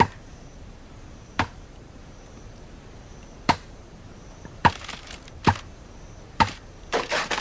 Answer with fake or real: fake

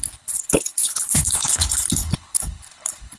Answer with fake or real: fake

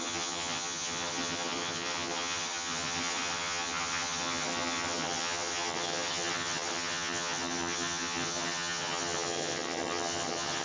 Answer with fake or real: fake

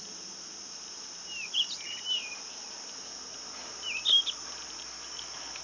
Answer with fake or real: fake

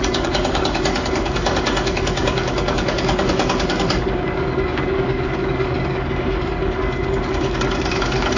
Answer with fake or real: fake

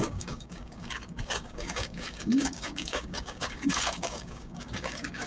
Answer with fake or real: fake